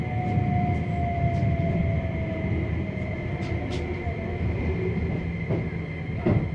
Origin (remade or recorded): recorded